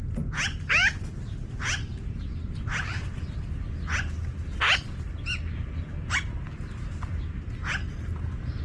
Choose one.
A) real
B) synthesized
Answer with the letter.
A